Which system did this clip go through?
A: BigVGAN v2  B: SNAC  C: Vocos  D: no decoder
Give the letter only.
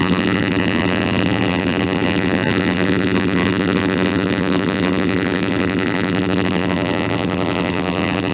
A